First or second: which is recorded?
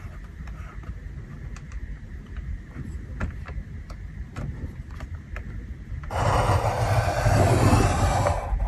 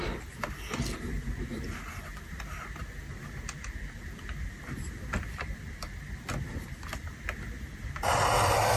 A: second